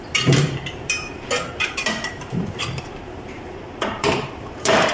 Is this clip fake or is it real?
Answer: fake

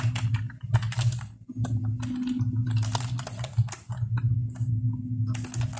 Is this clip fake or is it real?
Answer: real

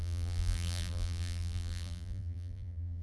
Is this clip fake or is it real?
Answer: fake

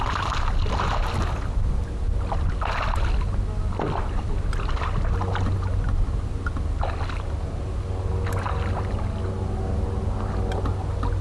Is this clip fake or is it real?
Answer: real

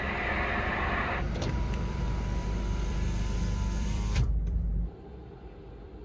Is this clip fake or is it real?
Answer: fake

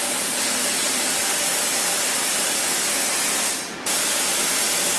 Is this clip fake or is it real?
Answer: real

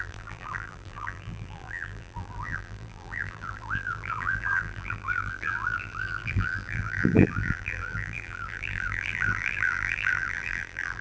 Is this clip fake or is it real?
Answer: fake